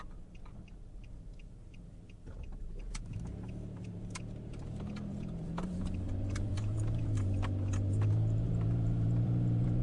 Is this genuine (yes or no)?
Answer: no